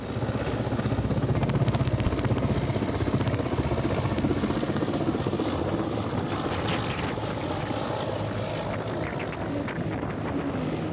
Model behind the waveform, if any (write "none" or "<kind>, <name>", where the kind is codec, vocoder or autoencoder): none